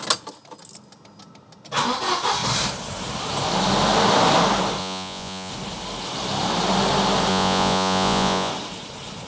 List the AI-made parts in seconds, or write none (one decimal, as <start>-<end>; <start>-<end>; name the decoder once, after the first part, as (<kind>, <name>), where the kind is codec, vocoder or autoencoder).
4.8-5.5 (vocoder, Vocos); 7.3-8.5